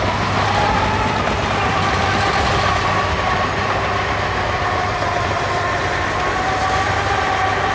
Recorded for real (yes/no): yes